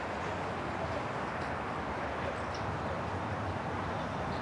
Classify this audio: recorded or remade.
recorded